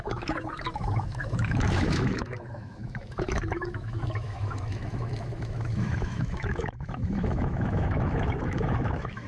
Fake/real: fake